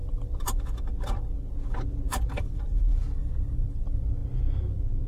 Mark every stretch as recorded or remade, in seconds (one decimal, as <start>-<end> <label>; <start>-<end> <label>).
0.0-5.1 recorded